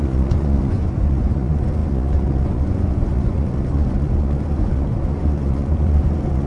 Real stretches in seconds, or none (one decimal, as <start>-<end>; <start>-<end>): none